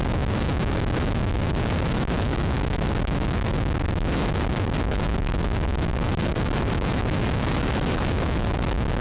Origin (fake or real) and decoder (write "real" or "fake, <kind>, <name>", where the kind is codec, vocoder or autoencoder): fake, autoencoder, DAC-VAE